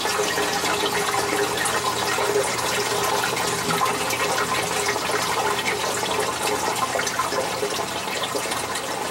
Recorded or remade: recorded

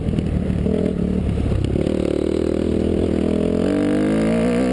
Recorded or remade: recorded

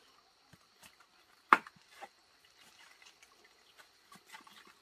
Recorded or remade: recorded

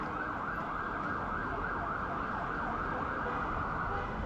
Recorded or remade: recorded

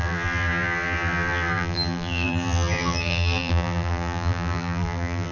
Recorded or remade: remade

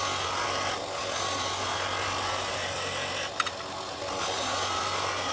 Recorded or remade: recorded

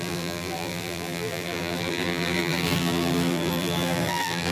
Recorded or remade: remade